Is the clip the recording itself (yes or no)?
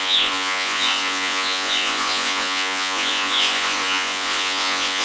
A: no